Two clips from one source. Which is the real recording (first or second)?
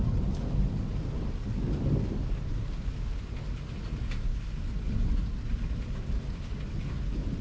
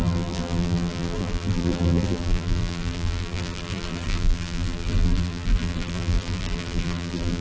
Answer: first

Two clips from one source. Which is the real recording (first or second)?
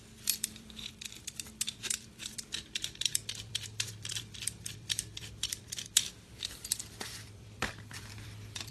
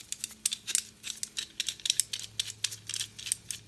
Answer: second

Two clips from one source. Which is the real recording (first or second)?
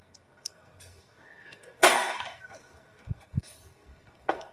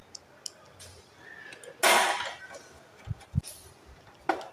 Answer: second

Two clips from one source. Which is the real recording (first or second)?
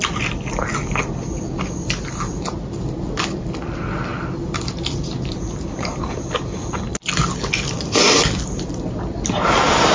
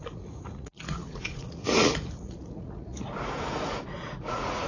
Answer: first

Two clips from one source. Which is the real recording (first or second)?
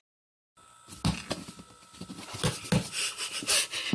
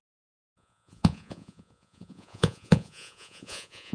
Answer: first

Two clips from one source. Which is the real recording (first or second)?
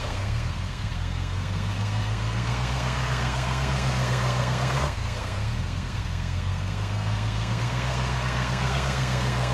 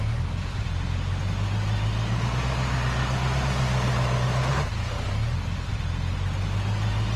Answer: second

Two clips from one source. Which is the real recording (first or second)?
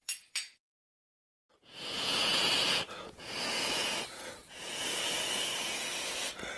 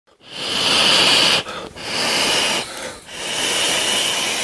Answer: second